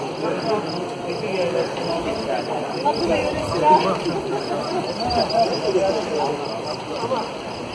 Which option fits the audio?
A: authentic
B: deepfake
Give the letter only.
A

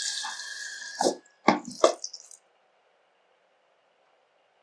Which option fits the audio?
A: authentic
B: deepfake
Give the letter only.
A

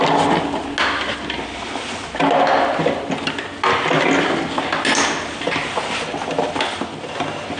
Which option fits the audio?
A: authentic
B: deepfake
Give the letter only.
A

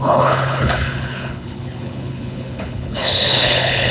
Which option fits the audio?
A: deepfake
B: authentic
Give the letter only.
A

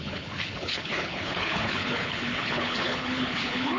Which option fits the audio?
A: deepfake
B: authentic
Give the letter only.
A